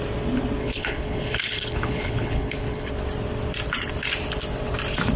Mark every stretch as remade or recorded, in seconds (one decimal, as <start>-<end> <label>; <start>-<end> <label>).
0.0-0.6 recorded; 0.6-2.9 remade; 2.9-5.2 recorded